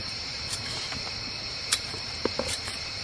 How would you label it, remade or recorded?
remade